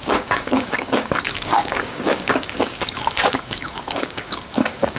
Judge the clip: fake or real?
fake